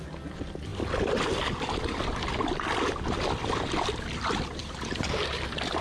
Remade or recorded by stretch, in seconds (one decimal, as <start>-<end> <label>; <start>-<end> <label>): 0.0-4.6 recorded; 4.6-5.8 remade